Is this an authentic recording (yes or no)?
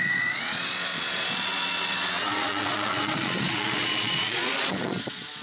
no